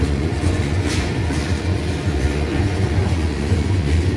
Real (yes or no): no